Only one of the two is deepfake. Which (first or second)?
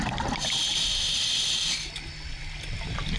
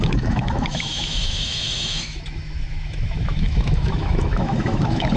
second